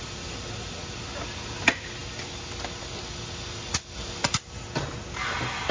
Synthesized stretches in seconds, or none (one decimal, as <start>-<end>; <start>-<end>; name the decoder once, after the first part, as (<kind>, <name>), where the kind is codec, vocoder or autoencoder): none